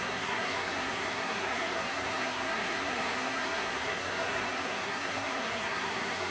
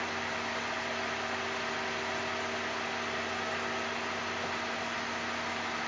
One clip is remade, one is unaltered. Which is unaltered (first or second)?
second